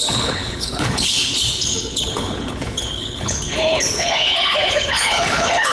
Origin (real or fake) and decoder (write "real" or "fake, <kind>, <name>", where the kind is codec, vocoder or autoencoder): fake, codec, HILCodec